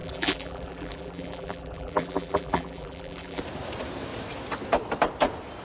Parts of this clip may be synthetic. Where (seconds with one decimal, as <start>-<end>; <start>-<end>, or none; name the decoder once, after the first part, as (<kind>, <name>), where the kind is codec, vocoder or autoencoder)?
0.0-3.4 (vocoder, BigVGAN v2)